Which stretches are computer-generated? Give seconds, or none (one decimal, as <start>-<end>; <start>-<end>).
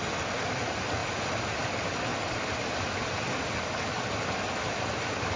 1.0-1.6